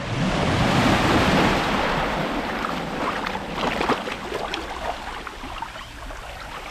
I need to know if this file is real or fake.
real